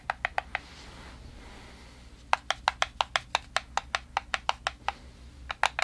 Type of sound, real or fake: real